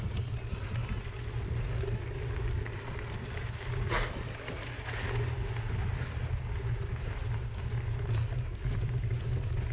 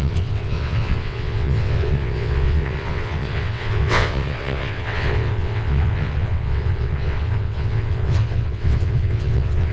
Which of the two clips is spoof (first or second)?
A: second